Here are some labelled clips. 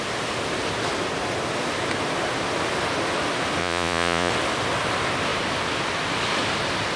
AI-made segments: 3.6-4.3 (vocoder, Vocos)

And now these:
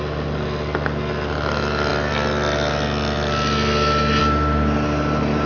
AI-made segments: none

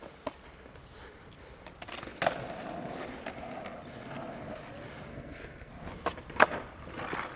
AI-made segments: 5.1-5.7 (codec, SNAC)

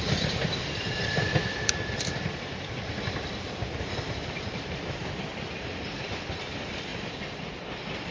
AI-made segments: 0.0-8.1 (vocoder, BigVGAN v2)

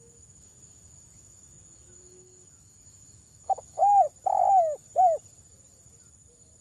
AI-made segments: 0.0-3.8 (autoencoder, DAC-VAE)